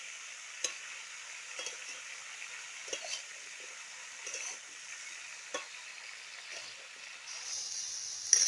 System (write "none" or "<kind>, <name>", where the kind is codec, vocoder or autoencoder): none